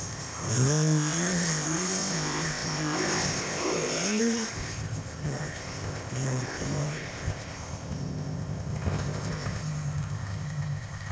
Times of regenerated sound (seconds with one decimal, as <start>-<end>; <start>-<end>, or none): 0.0-11.1